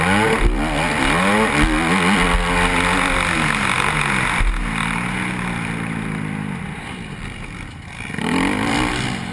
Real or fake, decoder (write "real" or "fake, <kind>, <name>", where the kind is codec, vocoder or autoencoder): real